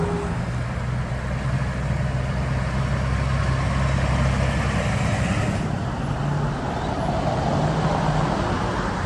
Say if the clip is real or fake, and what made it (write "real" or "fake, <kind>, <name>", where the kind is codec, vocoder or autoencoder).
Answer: real